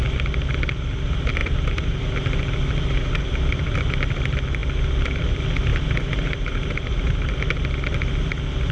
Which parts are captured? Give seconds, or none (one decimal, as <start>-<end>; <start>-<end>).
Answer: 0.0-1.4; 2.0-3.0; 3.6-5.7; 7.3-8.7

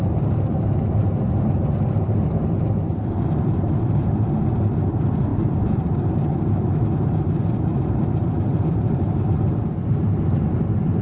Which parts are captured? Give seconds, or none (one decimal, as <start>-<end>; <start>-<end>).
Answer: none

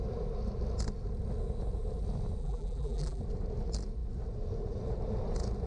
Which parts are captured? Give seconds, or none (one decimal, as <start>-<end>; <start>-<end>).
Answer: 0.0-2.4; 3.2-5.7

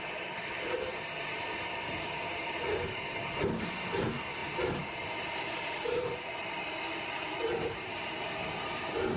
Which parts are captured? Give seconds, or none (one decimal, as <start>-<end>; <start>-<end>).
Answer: none